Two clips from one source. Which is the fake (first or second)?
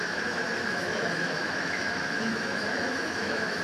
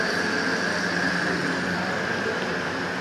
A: first